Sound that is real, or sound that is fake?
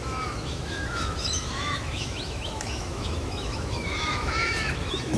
fake